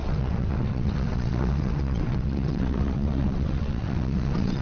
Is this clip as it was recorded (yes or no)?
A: no